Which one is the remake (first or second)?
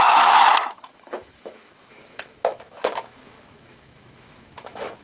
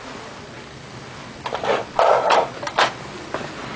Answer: first